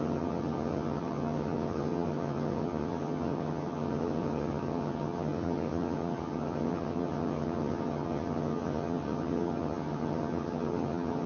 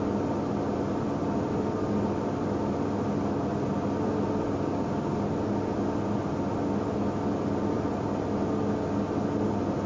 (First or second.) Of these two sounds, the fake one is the first